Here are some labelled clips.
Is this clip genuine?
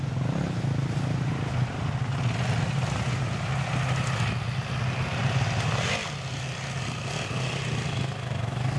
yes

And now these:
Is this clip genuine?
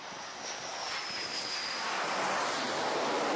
yes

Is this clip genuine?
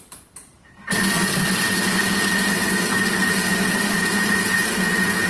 yes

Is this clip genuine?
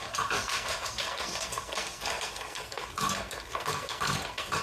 no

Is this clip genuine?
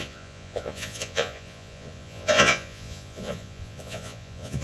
no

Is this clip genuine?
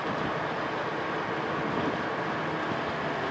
yes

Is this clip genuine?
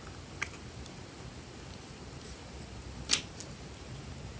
yes